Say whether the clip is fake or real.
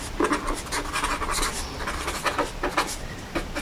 real